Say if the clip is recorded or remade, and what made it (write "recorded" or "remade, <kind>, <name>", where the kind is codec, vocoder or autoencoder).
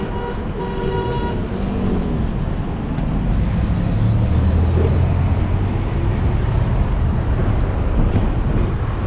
recorded